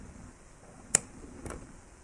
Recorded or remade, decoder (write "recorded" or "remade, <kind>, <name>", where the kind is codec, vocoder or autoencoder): recorded